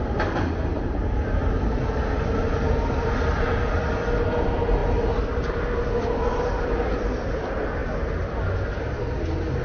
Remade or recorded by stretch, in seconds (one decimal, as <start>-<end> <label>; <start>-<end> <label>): 0.0-0.7 recorded; 0.7-1.8 remade; 1.8-9.6 recorded